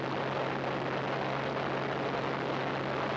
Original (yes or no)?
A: yes